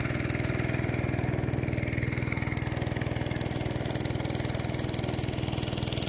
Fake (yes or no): no